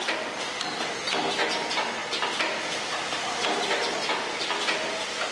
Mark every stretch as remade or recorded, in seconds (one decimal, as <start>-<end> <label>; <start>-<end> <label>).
0.0-5.3 recorded